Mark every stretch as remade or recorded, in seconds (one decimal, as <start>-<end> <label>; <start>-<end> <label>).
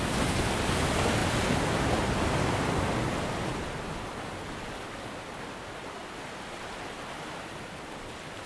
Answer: 0.0-8.5 recorded